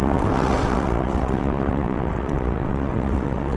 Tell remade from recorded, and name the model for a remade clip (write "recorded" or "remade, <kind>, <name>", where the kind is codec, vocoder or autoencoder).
remade, vocoder, WaveNeXt